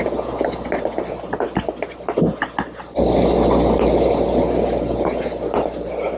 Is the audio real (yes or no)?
yes